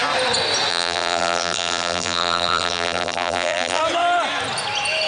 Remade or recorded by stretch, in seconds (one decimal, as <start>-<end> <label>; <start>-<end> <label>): 0.0-0.7 recorded; 0.7-3.8 remade; 3.8-5.1 recorded